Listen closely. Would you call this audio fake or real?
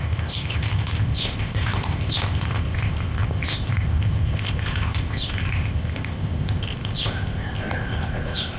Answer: fake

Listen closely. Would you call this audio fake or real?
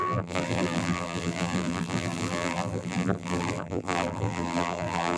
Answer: fake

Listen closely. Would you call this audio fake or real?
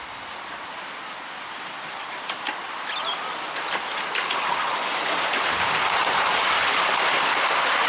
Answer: real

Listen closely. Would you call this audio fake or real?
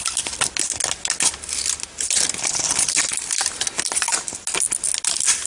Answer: real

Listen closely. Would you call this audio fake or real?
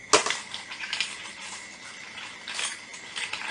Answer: real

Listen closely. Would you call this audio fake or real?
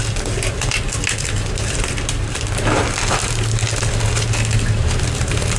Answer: real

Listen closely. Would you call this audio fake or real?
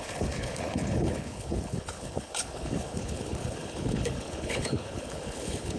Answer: fake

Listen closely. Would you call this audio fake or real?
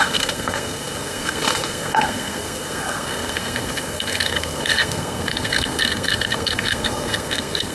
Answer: fake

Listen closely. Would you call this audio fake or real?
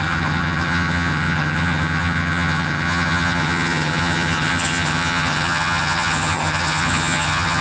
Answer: fake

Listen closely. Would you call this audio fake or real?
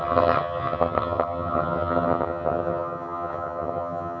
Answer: fake